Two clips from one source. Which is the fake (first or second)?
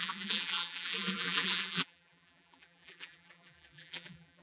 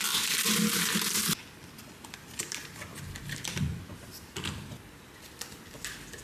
first